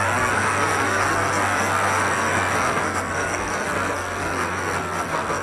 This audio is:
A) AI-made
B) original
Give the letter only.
A